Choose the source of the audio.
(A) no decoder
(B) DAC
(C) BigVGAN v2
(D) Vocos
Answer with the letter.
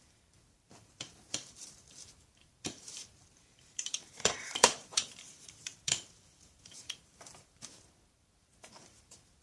C